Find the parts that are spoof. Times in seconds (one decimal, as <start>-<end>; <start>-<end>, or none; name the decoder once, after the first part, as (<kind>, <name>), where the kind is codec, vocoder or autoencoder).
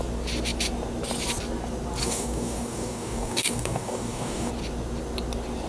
2.0-4.5 (codec, DAC)